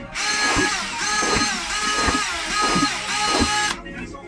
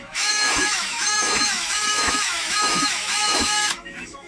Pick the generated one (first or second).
second